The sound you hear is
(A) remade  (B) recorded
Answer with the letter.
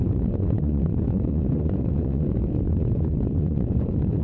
A